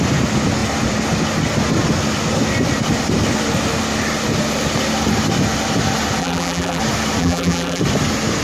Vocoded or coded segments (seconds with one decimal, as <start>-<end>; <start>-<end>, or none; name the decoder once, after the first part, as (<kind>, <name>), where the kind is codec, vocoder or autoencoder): 6.2-6.8 (vocoder, BigVGAN v2); 7.2-7.8